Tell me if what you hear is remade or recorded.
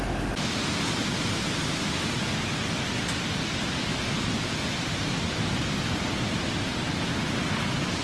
recorded